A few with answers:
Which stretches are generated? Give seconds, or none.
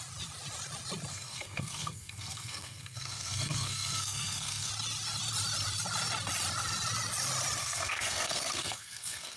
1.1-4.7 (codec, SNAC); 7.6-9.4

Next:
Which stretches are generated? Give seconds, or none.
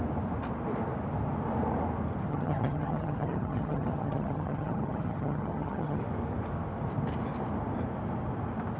2.3-6.0 (vocoder, HiFi-GAN)